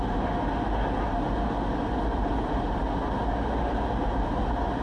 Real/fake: real